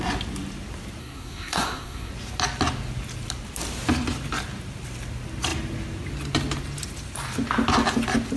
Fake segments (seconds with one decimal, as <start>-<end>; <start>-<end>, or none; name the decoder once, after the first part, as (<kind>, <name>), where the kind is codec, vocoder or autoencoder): 1.0-2.1 (codec, SNAC)